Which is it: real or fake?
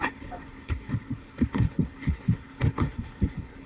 fake